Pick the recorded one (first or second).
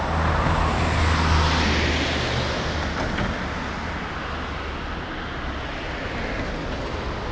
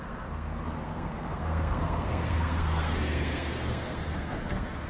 first